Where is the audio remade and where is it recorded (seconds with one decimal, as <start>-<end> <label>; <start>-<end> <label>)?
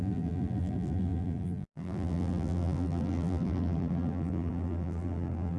0.0-5.6 remade